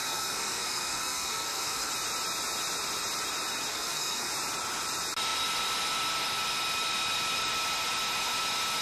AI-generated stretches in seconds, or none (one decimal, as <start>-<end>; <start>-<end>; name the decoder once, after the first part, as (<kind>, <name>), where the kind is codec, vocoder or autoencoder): 0.0-1.9 (codec, SNAC); 3.7-4.3